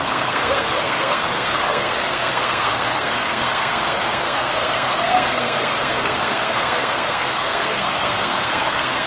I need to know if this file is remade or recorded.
remade